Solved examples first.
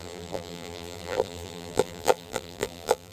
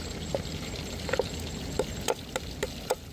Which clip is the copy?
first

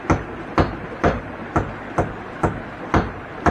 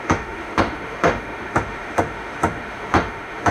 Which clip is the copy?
second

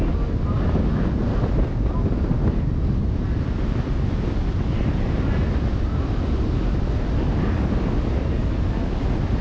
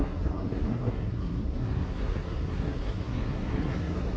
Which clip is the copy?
second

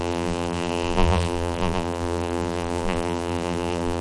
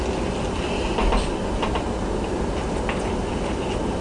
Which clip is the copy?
first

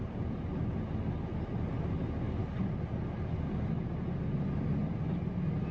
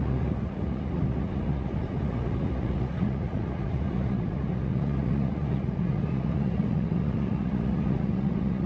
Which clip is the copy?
second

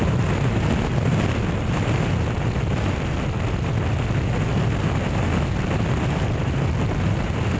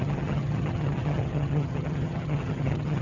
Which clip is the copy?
second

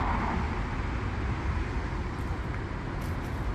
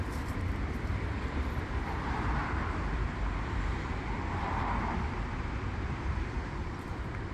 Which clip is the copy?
second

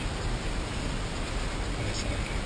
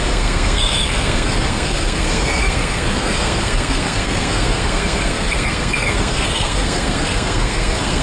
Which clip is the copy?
second